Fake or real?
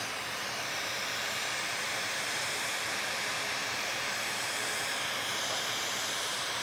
fake